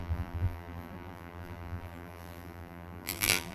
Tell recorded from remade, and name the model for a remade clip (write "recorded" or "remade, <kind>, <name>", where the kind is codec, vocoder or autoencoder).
remade, vocoder, BigVGAN v2